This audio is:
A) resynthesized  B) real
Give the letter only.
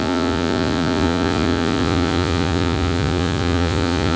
A